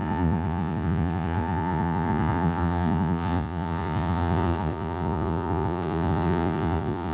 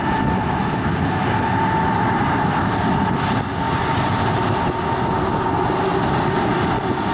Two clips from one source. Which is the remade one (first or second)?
first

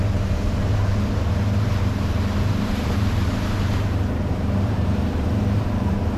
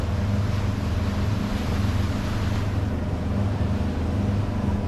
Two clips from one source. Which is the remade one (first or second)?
first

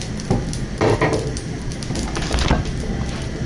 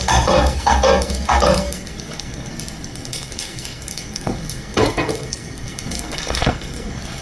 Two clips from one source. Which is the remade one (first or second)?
second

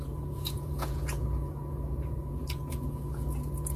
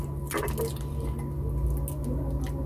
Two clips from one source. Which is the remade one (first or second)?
first